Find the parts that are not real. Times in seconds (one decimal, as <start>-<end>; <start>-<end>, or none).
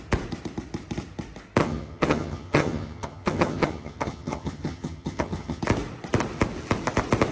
1.6-5.6